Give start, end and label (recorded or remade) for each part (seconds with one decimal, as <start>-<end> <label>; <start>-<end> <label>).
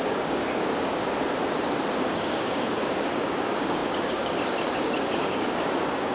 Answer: 0.0-1.0 remade; 1.0-2.0 recorded; 2.0-6.1 remade